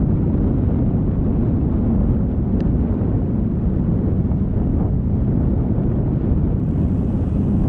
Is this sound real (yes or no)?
yes